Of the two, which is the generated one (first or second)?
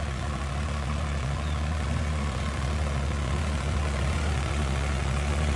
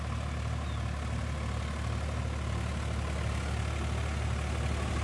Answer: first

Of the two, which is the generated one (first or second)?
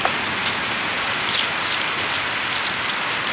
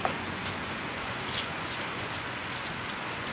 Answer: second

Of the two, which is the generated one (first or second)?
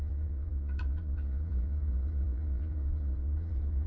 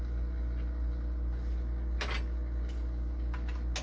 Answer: first